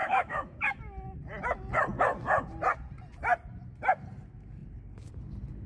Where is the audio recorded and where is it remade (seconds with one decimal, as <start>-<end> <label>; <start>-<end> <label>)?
0.0-0.8 remade; 0.8-5.7 recorded